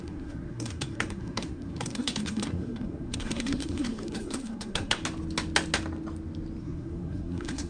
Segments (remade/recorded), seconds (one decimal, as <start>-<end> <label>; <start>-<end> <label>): 0.0-5.0 remade; 5.0-6.6 recorded; 6.6-7.7 remade